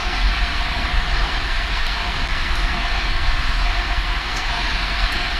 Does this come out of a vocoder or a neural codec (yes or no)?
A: yes